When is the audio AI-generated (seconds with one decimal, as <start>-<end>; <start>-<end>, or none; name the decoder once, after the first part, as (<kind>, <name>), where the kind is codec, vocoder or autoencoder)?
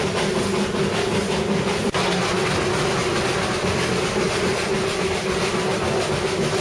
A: none